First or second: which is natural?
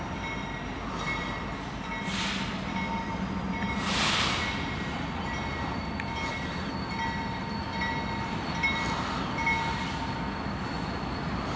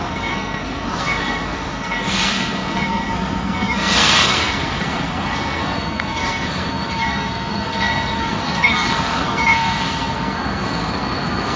first